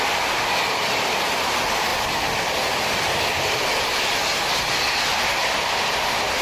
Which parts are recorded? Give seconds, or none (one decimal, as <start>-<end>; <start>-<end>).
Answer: 0.0-6.4